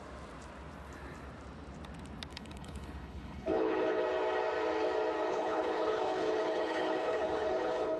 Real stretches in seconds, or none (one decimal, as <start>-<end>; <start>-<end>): 0.0-2.3; 4.0-5.3